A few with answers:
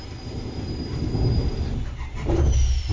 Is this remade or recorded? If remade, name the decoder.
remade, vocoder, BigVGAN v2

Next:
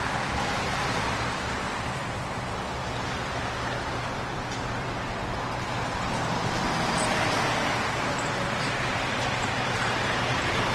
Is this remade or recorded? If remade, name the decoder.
remade, vocoder, BigVGAN v2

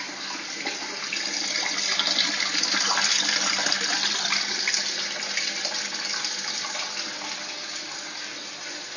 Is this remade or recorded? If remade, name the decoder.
remade, vocoder, BigVGAN v2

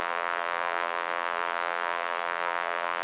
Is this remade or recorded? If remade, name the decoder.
remade, vocoder, BigVGAN v2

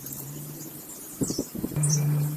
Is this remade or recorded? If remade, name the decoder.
remade, vocoder, BigVGAN v2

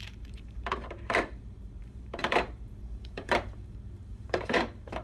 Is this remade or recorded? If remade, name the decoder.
remade, vocoder, BigVGAN v2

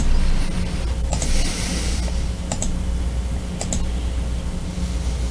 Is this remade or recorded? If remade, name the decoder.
recorded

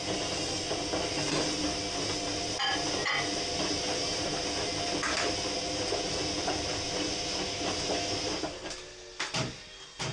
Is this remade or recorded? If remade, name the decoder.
recorded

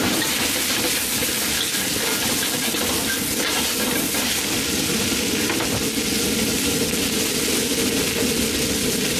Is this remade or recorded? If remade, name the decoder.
recorded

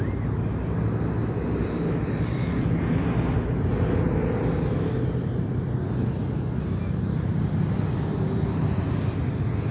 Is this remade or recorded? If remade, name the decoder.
recorded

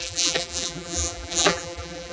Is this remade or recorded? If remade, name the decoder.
remade, vocoder, BigVGAN v2